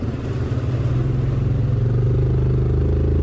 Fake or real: real